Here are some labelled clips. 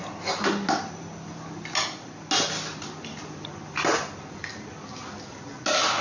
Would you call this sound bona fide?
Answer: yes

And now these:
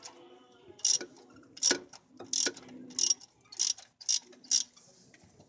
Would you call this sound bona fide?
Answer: yes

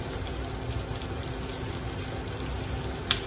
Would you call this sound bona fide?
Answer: yes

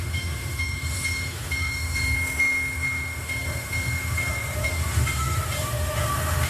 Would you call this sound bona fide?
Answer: no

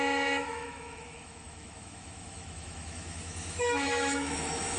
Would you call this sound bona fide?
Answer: no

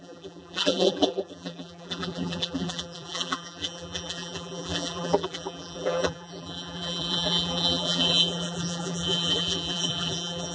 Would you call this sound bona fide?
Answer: no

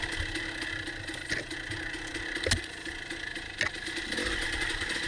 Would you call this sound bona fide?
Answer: yes